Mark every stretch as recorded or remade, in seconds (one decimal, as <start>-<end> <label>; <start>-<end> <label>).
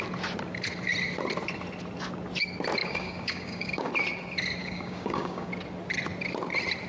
0.0-2.8 recorded; 2.8-3.9 remade; 3.9-4.6 recorded; 4.6-5.5 remade; 5.5-6.9 recorded